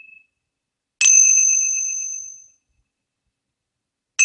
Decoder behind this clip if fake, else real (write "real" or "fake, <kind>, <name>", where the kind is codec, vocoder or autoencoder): real